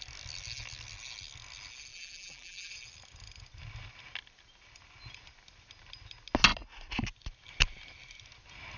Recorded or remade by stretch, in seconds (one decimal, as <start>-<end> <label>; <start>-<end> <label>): 0.0-1.9 recorded; 1.9-2.7 remade; 2.7-8.8 recorded